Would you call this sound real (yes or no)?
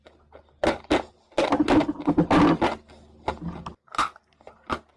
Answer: yes